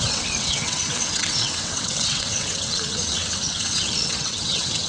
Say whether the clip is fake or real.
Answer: fake